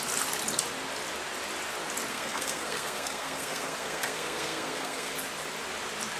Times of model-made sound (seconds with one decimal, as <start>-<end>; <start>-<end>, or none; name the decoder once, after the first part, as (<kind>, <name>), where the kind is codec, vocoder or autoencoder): 2.1-5.1 (codec, SNAC)